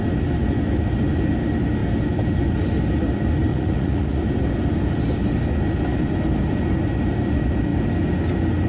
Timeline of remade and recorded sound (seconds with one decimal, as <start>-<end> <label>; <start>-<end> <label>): 0.0-3.5 recorded; 3.5-4.2 remade; 4.2-8.7 recorded